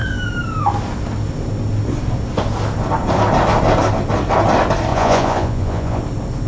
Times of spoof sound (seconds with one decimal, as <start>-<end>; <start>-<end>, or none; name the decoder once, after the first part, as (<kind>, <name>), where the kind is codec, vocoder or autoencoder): 4.9-6.0 (vocoder, Vocos)